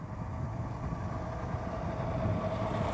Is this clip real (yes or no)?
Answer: yes